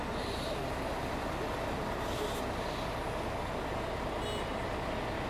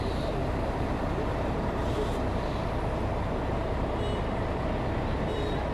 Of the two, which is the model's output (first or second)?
second